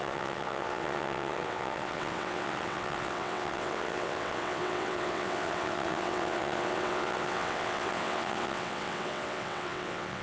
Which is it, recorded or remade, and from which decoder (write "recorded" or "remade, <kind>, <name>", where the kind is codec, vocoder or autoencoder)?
remade, vocoder, WaveNeXt